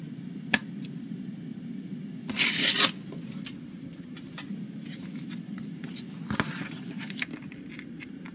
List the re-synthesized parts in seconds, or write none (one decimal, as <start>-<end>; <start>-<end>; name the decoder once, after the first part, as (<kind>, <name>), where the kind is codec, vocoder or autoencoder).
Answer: none